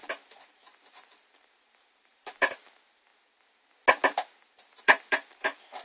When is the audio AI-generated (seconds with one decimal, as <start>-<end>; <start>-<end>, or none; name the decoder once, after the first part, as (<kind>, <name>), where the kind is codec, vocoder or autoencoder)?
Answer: 0.0-3.1 (vocoder, BigVGAN v2); 4.8-5.8